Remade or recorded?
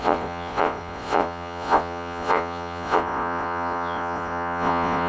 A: remade